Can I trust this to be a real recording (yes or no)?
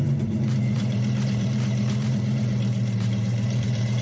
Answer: no